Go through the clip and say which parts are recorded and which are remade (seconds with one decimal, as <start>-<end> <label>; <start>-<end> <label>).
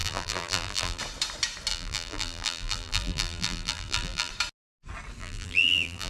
0.0-1.0 remade; 1.0-1.7 recorded; 1.7-4.3 remade; 4.3-5.2 recorded; 5.2-6.1 remade